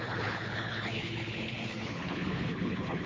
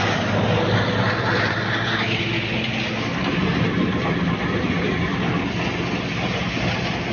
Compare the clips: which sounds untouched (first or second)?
second